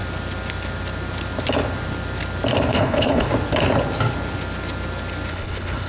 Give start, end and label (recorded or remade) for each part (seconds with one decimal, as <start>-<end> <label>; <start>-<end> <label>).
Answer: 0.0-2.7 recorded; 2.7-3.3 remade; 3.3-5.3 recorded; 5.3-5.9 remade